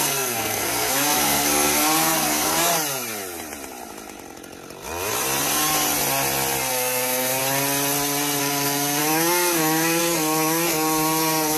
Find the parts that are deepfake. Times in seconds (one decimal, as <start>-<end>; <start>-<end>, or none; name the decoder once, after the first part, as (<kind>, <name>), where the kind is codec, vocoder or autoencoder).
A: 0.0-2.7 (codec, SNAC); 6.7-7.4; 8.4-11.6